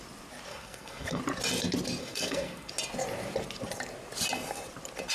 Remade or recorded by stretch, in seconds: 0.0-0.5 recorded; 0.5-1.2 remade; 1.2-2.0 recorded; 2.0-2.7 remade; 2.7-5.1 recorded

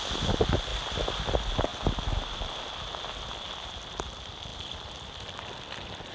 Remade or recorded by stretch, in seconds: 0.0-6.1 recorded